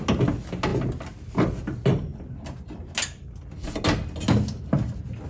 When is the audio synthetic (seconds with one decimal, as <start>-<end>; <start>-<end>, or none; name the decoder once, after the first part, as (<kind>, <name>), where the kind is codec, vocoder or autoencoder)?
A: none